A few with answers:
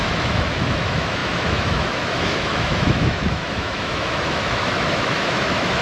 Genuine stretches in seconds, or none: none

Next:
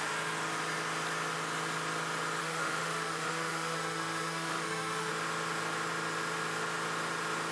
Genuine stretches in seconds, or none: 0.0-2.4; 5.1-7.5

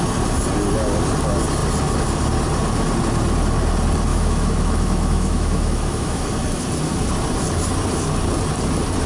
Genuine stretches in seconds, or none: 0.0-4.1; 6.2-9.1

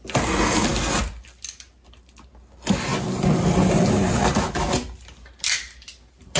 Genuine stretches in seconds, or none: 0.0-6.4

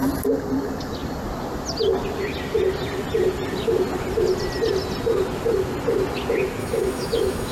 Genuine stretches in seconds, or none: 0.0-6.6

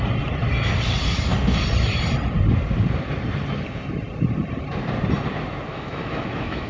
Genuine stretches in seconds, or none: 0.0-5.7

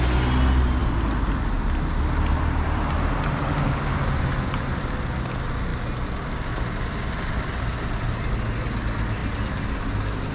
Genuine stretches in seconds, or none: 0.0-10.3

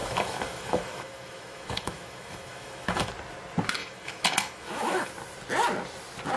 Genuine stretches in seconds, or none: 3.1-3.8; 5.1-6.4